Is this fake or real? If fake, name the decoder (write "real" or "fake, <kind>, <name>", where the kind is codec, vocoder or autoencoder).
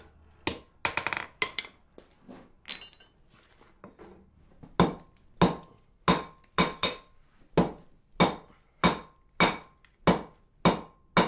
real